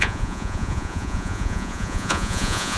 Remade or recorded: remade